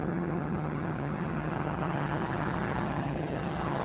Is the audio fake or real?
fake